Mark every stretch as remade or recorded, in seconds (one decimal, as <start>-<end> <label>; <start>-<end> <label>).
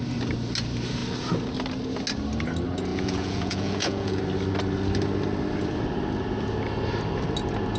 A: 0.0-2.9 recorded; 2.9-4.2 remade; 4.2-7.8 recorded